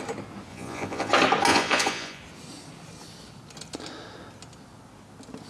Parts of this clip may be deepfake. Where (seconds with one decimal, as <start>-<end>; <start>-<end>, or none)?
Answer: 0.5-1.1; 1.5-2.2